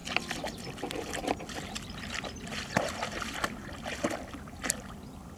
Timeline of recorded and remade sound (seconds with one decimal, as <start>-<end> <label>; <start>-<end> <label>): 0.0-5.4 recorded